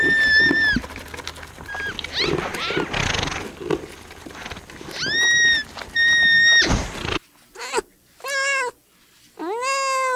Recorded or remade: recorded